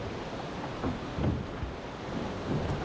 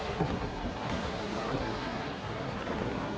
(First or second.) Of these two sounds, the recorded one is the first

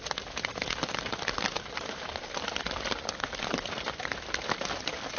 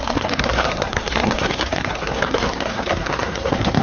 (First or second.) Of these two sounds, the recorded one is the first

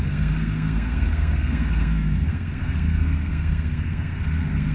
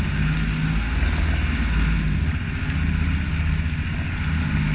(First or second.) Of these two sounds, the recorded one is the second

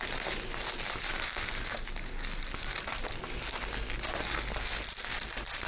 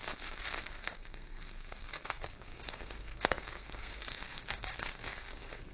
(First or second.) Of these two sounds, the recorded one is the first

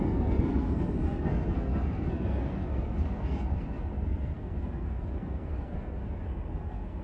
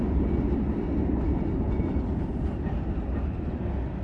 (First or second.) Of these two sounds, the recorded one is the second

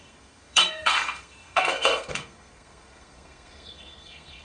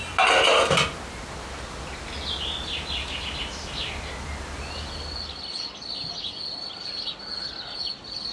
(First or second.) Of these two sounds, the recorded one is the second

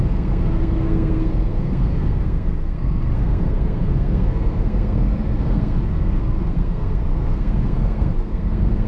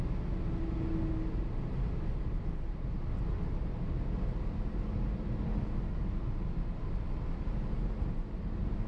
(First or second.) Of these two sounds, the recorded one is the second